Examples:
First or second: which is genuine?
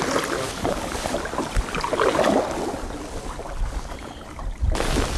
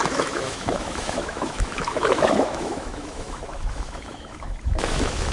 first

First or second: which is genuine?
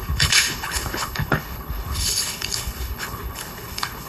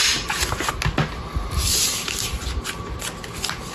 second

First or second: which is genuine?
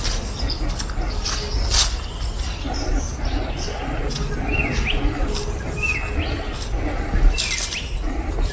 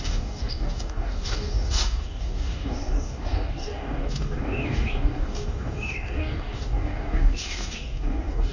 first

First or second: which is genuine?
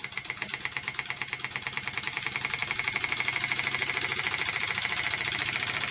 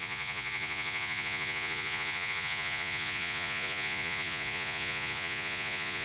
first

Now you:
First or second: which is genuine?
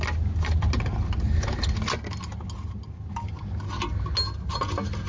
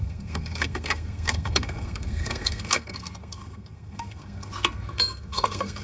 first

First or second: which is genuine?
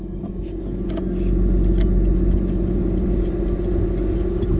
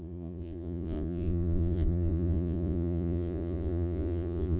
first